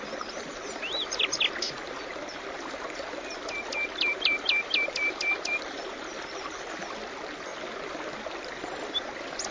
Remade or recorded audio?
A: recorded